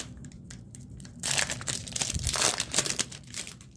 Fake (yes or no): yes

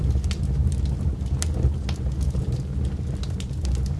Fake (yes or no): no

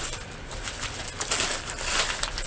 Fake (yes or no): no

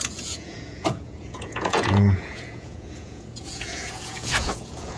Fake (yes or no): yes